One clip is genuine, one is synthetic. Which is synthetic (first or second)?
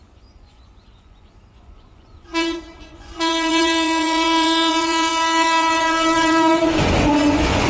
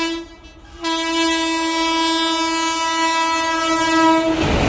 first